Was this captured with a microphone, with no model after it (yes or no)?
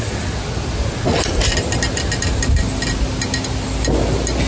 yes